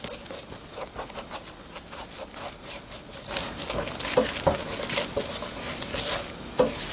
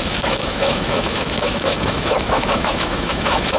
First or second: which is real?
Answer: first